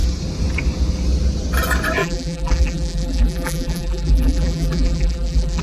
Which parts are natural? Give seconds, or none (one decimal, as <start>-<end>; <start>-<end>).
0.0-2.0